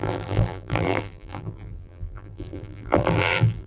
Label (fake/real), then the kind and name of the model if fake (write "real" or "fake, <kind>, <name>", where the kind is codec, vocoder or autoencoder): fake, vocoder, BigVGAN v2